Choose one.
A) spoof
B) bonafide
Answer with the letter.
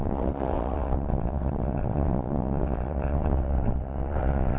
A